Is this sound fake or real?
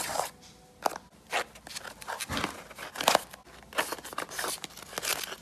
real